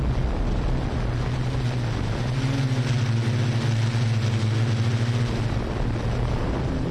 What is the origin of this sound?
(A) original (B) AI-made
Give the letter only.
A